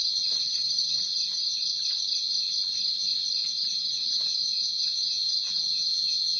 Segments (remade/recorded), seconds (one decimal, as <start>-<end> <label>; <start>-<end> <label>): 0.0-0.4 recorded; 0.4-1.0 remade; 1.0-6.4 recorded